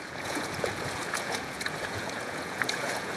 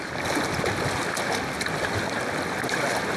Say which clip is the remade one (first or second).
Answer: first